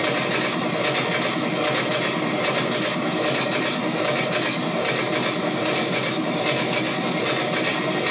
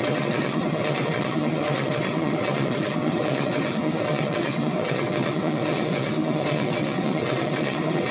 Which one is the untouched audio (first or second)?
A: first